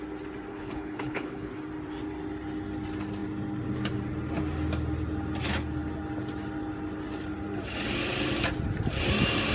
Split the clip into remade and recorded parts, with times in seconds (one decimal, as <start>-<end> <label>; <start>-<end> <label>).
0.0-0.5 recorded; 0.5-1.5 remade; 1.5-9.5 recorded